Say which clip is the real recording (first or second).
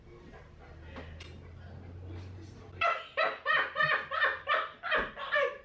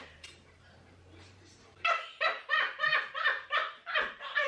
first